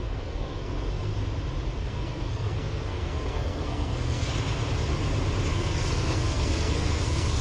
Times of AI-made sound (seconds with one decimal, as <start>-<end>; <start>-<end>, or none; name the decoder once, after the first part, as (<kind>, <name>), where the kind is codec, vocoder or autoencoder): 0.0-1.1 (codec, SNAC); 1.8-4.3; 5.5-7.4